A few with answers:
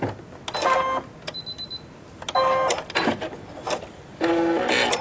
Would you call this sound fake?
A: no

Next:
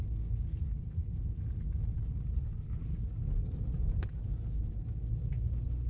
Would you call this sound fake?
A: no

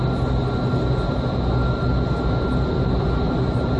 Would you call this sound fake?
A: no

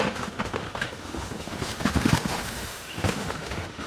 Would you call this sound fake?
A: yes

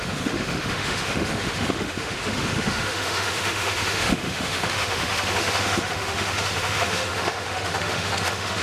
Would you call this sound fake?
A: yes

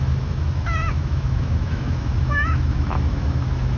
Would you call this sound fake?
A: yes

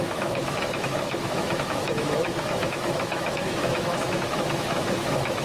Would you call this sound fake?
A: yes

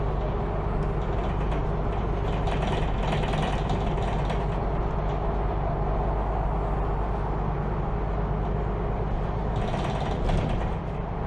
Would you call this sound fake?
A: no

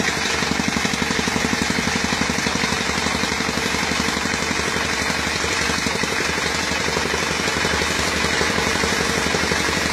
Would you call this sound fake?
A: no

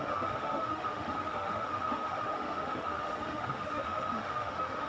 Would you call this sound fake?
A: yes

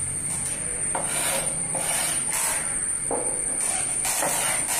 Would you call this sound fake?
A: no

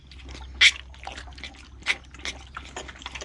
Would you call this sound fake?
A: no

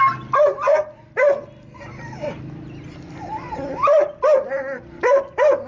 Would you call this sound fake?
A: no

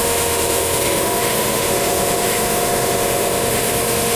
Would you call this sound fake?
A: yes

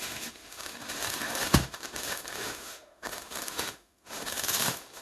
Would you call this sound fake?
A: yes